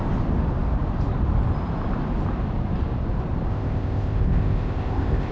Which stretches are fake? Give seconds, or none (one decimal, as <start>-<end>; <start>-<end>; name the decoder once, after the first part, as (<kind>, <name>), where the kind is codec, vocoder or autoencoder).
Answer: 3.5-5.3 (codec, ZipCodec)

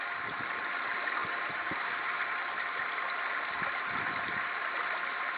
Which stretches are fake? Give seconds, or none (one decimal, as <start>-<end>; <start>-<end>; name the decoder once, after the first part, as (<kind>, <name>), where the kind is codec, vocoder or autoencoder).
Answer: none

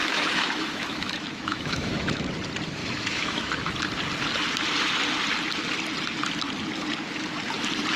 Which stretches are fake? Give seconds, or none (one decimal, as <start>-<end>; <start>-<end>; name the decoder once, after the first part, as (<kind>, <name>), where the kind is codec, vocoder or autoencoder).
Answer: 0.0-2.3 (autoencoder, DAC-VAE); 2.8-3.5

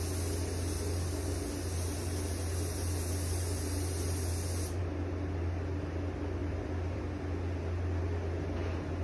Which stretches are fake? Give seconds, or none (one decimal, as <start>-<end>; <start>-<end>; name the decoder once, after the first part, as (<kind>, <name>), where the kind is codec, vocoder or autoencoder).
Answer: 6.4-7.0 (vocoder, BigVGAN v2)